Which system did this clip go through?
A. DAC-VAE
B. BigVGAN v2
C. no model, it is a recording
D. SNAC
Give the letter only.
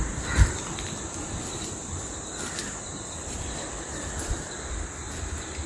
B